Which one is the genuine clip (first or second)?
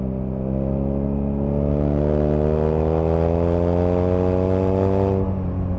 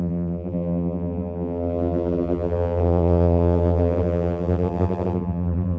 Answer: first